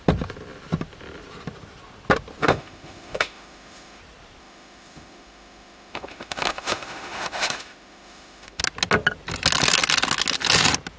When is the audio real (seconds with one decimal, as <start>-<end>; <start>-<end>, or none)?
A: 0.0-2.4; 4.0-4.4; 8.6-11.0